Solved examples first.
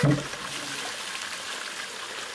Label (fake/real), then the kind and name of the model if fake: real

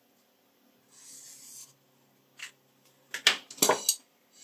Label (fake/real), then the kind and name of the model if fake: real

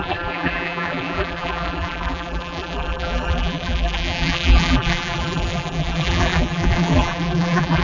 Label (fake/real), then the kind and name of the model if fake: fake, vocoder, BigVGAN v2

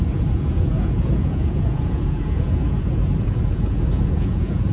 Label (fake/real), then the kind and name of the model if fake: fake, vocoder, Vocos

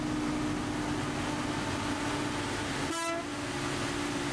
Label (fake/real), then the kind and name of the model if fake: real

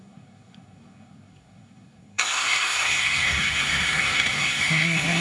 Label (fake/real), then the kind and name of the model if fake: fake, codec, SNAC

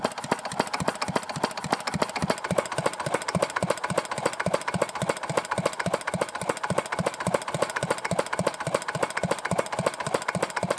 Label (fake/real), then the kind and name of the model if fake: real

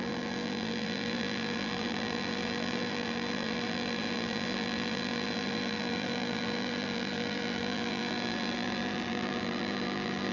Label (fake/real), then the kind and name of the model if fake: fake, vocoder, BigVGAN v2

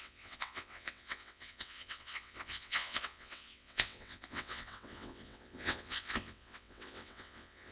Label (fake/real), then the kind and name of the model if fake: fake, vocoder, WaveNeXt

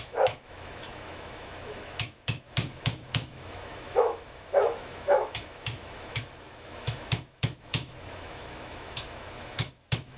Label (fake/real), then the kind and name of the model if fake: fake, autoencoder, DAC-VAE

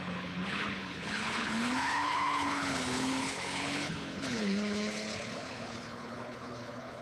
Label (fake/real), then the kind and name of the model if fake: fake, codec, HILCodec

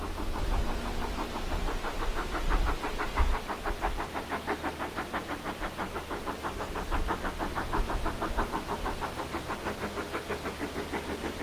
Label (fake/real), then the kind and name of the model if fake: real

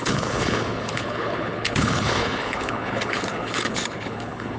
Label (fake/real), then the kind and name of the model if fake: fake, codec, HILCodec